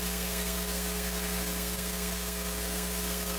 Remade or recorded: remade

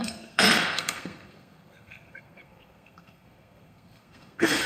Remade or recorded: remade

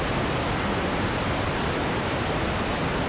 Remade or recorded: recorded